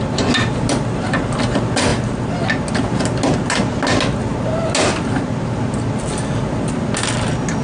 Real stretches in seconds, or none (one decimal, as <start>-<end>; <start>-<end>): 0.0-7.6